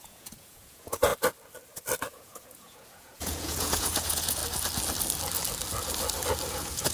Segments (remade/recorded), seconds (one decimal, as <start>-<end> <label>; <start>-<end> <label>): 0.0-1.1 remade; 1.1-2.1 recorded; 2.1-4.4 remade; 4.4-6.5 recorded; 6.5-6.9 remade